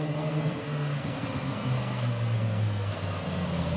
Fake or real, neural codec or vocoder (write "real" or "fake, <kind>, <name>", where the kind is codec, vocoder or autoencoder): fake, codec, SNAC